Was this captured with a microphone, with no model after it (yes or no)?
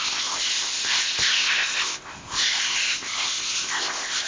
no